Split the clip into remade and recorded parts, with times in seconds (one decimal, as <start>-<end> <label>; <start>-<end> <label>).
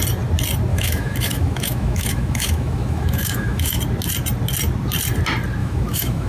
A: 0.0-0.7 recorded; 0.7-3.8 remade; 3.8-5.6 recorded; 5.6-6.3 remade